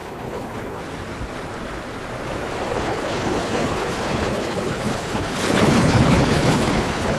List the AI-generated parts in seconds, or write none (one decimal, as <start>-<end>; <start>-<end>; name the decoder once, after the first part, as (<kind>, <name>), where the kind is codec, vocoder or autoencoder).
0.0-0.8 (codec, HILCodec); 2.7-7.2